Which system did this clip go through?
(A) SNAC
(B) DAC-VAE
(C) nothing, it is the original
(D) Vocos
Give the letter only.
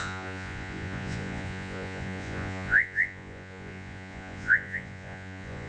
D